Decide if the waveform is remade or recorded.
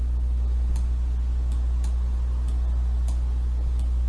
recorded